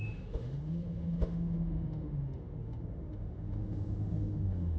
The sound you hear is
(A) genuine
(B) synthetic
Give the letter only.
B